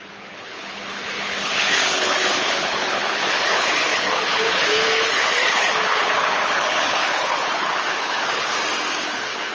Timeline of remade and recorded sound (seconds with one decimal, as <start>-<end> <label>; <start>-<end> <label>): 0.0-8.5 remade; 8.5-9.0 recorded; 9.0-9.5 remade